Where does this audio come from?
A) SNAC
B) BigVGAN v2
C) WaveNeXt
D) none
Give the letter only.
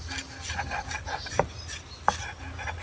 D